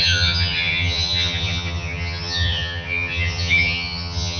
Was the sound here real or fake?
fake